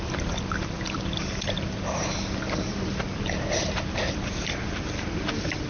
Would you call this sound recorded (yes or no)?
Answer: yes